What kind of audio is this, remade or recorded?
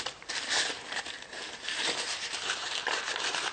remade